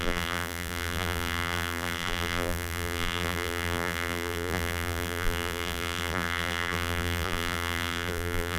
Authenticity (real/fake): fake